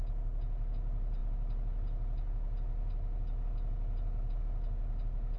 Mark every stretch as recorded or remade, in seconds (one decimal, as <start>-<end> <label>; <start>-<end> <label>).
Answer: 0.0-5.4 recorded